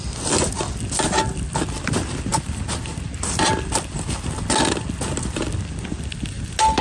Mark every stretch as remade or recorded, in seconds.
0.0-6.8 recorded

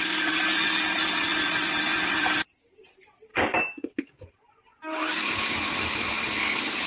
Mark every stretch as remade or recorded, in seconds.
0.0-6.9 recorded